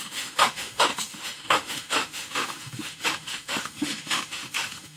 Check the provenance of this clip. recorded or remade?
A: remade